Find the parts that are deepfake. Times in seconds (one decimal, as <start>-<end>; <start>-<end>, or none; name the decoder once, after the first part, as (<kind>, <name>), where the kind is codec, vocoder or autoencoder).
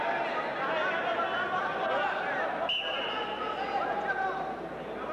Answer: 0.5-1.2 (vocoder, BigVGAN v2)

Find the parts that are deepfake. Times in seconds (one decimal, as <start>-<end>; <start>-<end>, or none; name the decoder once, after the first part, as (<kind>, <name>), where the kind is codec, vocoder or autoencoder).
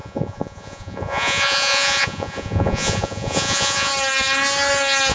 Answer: 0.0-3.9 (vocoder, Vocos)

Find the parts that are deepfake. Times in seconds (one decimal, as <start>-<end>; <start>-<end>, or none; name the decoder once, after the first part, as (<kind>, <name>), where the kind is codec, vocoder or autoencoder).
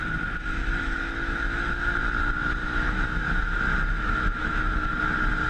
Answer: 0.6-2.0 (autoencoder, DAC-VAE); 2.6-5.0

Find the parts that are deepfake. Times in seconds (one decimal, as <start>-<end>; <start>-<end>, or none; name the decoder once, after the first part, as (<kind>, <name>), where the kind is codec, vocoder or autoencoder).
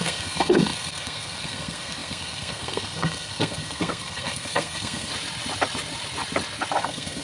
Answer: 0.0-5.1 (codec, SNAC); 6.8-7.2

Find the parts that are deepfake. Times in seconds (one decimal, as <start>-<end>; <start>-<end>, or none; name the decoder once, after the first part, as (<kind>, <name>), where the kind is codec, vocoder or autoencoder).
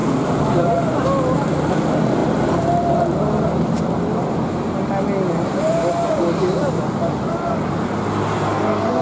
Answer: 0.0-1.7 (vocoder, BigVGAN v2)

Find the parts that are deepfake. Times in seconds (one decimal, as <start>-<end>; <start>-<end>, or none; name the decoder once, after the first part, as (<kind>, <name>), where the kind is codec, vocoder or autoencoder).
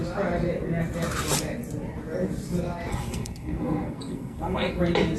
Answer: 2.9-4.8 (codec, SNAC)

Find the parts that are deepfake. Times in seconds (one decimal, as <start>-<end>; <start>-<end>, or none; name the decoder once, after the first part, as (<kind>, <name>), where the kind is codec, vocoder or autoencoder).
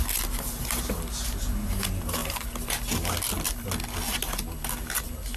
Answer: none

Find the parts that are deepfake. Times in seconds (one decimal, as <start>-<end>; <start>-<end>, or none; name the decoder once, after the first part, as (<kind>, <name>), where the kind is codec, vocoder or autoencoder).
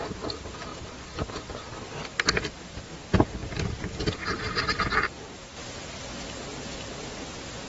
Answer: 0.7-1.3 (vocoder, BigVGAN v2); 3.4-5.2; 6.5-7.1